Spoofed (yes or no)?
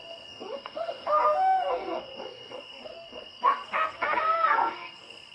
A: yes